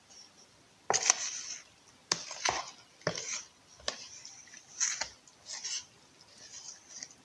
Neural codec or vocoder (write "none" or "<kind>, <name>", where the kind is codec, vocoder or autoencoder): none